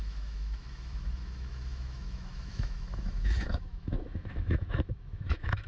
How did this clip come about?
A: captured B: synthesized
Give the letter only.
B